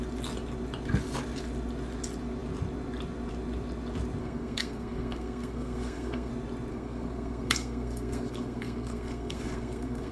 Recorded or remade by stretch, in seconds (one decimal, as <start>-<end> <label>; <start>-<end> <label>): 0.0-4.2 recorded; 4.2-6.3 remade; 6.3-6.7 recorded; 6.7-10.1 remade